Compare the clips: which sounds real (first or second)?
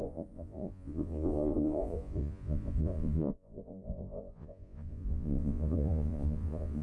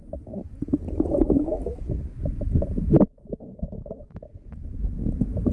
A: second